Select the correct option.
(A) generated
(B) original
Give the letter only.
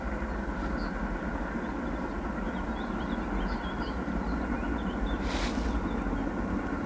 B